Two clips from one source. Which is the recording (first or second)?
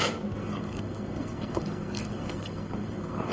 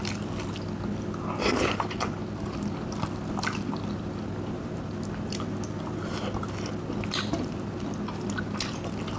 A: second